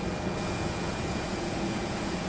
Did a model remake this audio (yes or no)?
yes